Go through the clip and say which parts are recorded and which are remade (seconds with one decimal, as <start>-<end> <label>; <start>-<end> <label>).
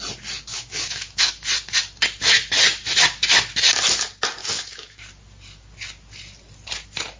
0.0-0.5 recorded; 0.5-1.3 remade; 1.3-4.4 recorded; 4.4-5.0 remade; 5.0-7.2 recorded